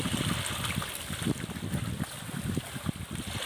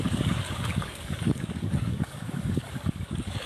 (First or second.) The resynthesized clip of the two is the second